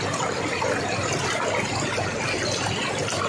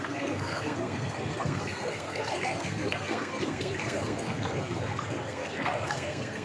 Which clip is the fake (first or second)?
second